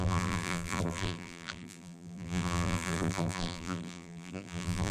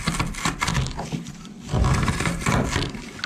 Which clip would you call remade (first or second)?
first